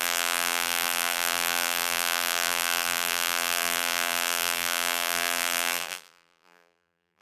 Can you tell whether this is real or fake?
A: fake